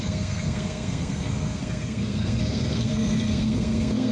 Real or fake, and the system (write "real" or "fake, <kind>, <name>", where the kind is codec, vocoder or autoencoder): fake, codec, SNAC